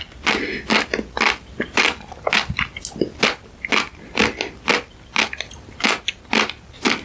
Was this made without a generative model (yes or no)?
yes